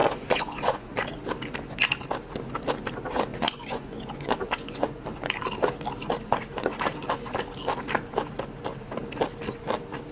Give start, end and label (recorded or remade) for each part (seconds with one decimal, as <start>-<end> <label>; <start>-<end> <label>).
0.0-1.0 remade; 1.0-3.3 recorded; 3.3-5.0 remade; 5.0-10.1 recorded